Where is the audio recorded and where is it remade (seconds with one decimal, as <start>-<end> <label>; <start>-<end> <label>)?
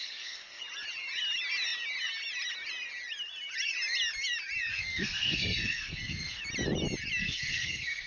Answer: 0.0-0.6 remade; 0.6-4.7 recorded; 4.7-6.4 remade; 6.4-7.2 recorded; 7.2-8.1 remade